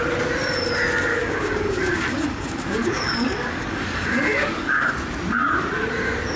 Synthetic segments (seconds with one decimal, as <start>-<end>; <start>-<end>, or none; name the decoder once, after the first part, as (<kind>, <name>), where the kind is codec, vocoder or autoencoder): 1.1-4.9 (codec, DAC)